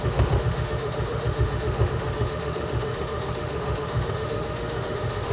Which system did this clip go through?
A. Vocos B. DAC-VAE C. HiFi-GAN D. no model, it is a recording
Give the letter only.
B